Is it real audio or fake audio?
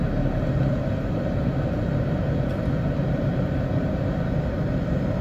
real